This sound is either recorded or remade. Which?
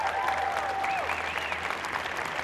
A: recorded